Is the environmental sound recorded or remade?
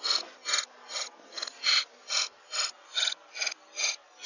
recorded